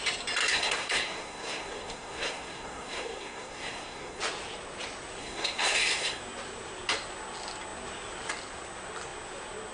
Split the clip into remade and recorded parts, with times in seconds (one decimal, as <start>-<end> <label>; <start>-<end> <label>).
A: 0.0-0.5 recorded; 0.5-4.2 remade; 4.2-5.2 recorded; 5.2-6.2 remade; 6.2-9.7 recorded